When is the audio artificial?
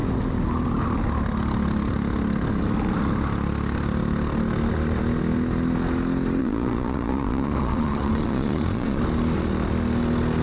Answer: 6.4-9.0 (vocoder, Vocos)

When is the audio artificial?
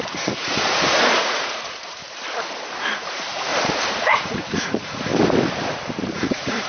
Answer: 0.0-2.0 (vocoder, Vocos); 2.8-3.5; 4.0-5.1; 6.1-6.7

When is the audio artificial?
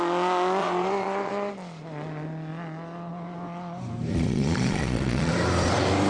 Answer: 0.6-1.5 (vocoder, Vocos); 4.1-5.3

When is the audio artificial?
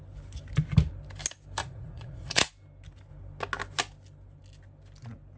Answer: 1.6-2.5 (vocoder, Vocos)